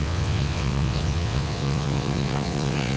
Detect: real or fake fake